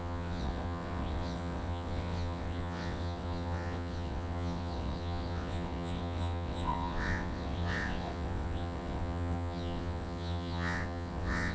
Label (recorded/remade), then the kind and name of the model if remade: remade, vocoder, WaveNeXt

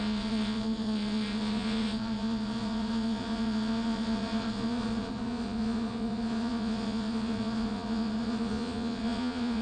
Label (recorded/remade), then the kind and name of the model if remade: remade, vocoder, Vocos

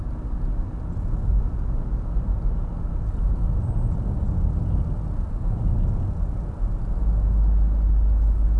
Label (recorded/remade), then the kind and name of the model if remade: recorded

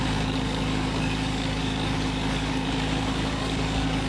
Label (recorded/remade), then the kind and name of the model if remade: remade, codec, DAC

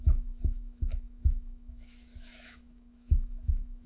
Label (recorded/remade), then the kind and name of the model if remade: remade, autoencoder, DAC-VAE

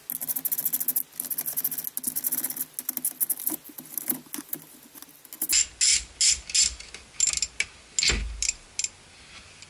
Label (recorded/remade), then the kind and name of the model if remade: recorded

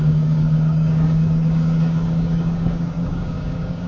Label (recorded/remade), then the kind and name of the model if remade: remade, codec, DAC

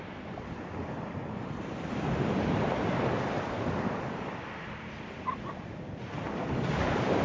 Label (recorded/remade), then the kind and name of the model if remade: recorded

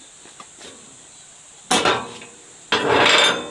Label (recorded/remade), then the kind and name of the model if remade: recorded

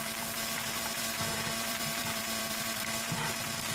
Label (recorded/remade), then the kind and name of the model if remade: remade, vocoder, BigVGAN v2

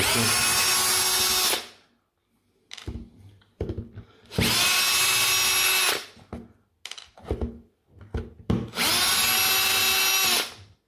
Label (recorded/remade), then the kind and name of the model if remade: recorded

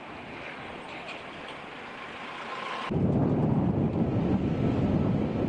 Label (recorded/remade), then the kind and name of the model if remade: recorded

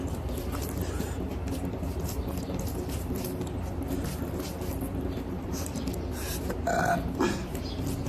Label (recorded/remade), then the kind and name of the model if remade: remade, vocoder, BigVGAN v2